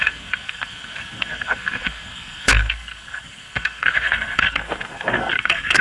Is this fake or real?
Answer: fake